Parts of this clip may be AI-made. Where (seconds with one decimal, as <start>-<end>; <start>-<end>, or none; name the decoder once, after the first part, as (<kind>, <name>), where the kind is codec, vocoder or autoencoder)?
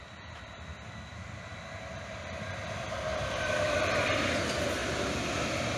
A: 1.5-2.5 (vocoder, BigVGAN v2); 3.1-4.1